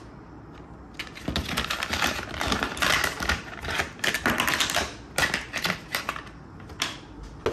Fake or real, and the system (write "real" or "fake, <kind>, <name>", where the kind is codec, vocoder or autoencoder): real